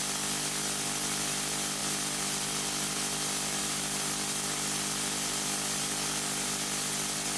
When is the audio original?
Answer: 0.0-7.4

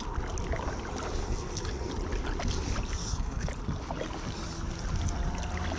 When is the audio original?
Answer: 0.0-1.2; 1.9-3.0; 3.5-5.8

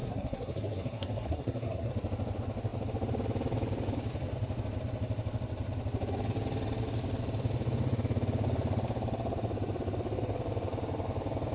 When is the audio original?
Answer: 1.9-11.5

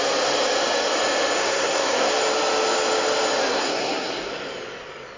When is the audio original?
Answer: 0.0-1.4; 2.1-3.5; 4.3-5.2

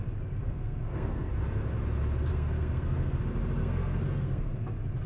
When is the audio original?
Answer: 0.0-0.4; 1.4-2.3; 3.2-3.6; 4.6-5.1